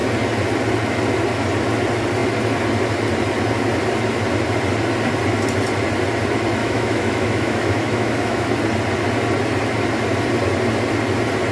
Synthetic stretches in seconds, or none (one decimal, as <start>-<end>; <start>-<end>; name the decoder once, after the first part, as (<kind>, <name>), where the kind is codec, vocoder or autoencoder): 6.6-8.5 (autoencoder, DAC-VAE)